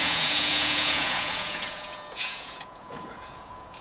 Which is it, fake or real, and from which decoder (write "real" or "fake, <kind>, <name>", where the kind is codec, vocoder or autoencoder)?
fake, vocoder, Vocos